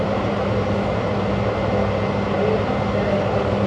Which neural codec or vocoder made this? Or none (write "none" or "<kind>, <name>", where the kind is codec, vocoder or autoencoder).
none